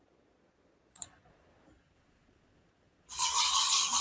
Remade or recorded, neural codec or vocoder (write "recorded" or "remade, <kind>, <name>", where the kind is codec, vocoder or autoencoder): remade, vocoder, Vocos